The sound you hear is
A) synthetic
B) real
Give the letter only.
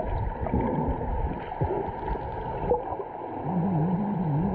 B